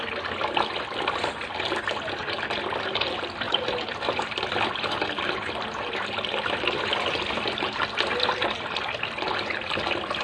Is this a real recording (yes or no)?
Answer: yes